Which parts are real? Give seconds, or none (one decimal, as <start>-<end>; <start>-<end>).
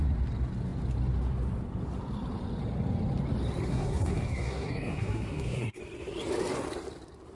0.0-3.7; 5.8-7.3